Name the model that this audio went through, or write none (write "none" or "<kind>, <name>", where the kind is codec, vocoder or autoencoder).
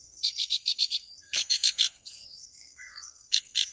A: codec, SNAC